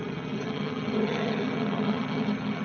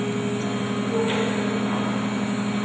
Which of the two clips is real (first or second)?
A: second